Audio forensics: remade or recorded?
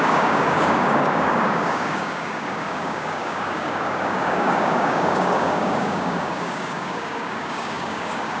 remade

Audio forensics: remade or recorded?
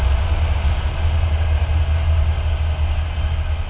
recorded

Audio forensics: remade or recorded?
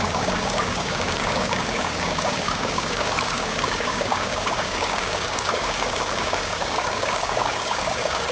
remade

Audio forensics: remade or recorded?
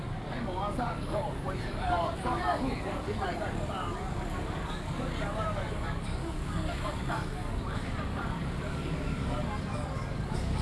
remade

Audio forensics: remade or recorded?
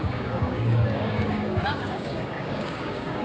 remade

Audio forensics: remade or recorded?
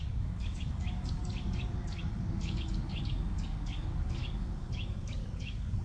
remade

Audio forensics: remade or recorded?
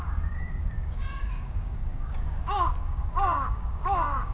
remade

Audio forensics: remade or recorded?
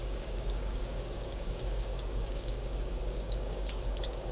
remade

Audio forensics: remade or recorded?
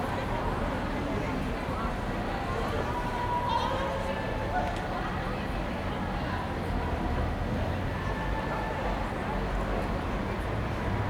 recorded